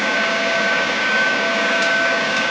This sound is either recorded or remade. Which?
remade